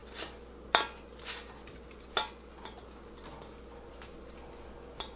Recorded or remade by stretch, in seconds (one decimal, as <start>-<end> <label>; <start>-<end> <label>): 0.0-5.2 recorded